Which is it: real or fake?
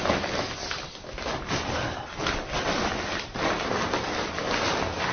real